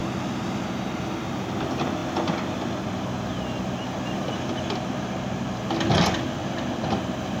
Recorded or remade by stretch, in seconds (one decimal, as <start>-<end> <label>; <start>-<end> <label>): 0.0-7.4 recorded